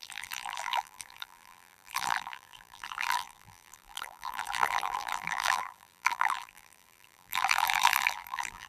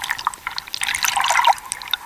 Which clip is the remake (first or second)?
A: first